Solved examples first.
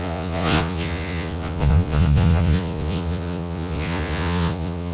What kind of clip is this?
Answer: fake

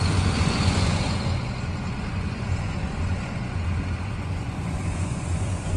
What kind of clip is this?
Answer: fake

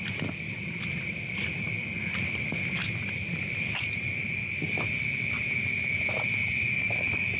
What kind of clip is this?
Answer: real